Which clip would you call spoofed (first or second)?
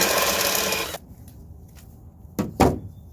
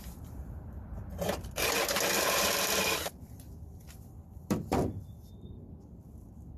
second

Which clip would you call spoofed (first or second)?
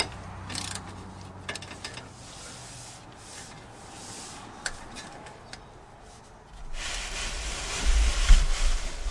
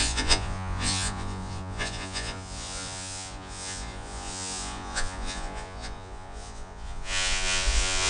second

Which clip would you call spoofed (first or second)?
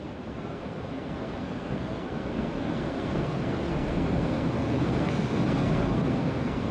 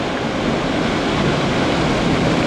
first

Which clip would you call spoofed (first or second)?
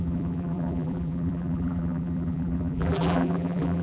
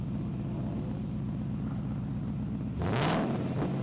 first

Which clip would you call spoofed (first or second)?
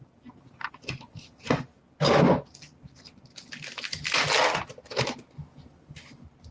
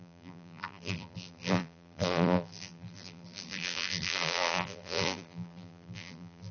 second